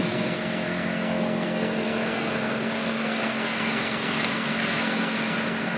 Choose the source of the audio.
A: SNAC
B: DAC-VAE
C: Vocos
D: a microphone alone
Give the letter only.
A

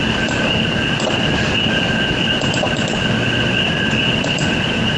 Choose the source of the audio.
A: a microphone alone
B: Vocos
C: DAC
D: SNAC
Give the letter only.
A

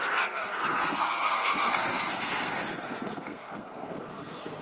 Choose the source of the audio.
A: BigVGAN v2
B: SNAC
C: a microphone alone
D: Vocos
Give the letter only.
B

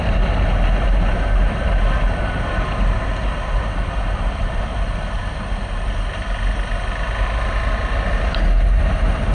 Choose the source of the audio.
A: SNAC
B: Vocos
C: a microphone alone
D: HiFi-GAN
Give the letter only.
C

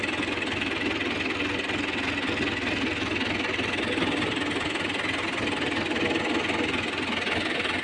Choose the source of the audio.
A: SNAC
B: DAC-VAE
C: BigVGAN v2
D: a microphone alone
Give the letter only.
D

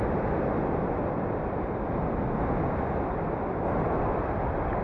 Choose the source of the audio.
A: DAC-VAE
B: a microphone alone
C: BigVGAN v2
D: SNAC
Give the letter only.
B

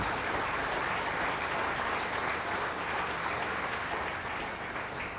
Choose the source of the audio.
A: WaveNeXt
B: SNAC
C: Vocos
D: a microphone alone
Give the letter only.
D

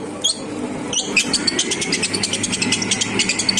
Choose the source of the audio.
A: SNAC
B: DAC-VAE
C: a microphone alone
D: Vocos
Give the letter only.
C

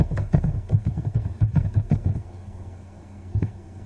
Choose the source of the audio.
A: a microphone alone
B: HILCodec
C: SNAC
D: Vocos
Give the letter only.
C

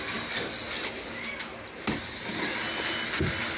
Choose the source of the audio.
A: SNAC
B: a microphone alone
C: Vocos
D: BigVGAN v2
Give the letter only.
B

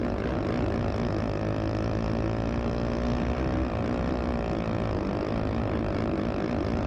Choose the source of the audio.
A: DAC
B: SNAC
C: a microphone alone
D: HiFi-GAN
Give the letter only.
C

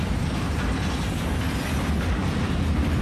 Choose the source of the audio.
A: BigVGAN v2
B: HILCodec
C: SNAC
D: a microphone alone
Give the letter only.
D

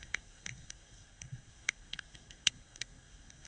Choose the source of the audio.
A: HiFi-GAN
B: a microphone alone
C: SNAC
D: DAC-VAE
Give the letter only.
C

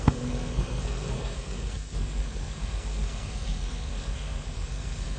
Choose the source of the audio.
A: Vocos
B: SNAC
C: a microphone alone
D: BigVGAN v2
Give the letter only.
B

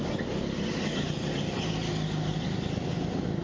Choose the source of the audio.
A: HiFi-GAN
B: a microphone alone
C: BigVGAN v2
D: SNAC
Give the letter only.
B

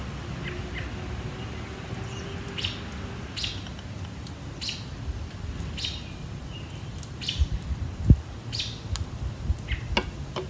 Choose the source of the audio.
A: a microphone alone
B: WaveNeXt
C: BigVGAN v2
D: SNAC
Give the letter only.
A